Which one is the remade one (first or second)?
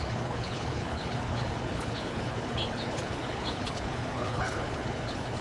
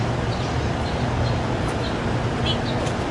first